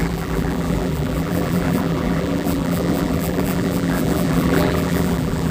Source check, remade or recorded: remade